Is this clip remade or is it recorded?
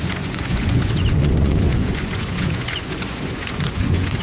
remade